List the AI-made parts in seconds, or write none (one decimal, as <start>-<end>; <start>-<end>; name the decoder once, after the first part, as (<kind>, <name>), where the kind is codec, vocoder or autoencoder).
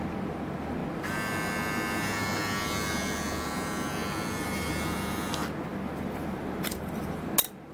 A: 5.7-7.3 (vocoder, BigVGAN v2)